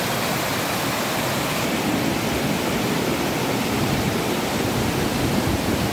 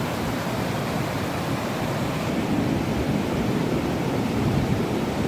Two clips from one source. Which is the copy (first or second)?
second